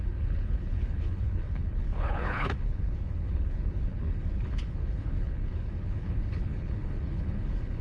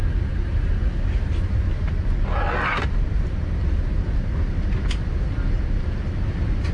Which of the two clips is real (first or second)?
second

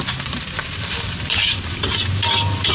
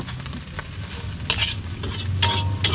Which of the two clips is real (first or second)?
second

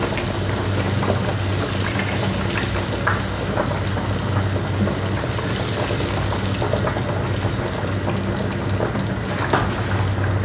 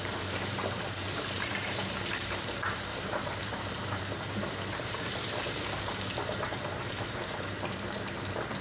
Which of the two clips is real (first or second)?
first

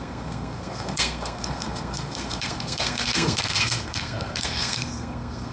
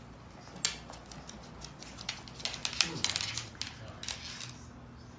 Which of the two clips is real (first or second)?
second